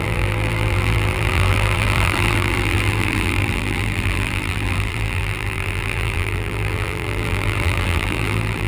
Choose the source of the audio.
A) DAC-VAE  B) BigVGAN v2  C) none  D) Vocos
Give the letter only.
B